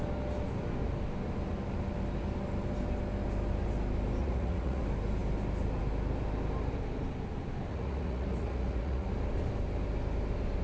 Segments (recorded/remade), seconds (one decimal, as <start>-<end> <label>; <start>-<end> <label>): 0.0-4.2 recorded; 4.2-4.8 remade; 4.8-7.7 recorded; 7.7-9.1 remade; 9.1-10.6 recorded